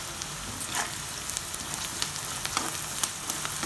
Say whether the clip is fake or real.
real